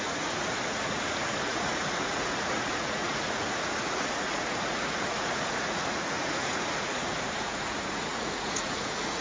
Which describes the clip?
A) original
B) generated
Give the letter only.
B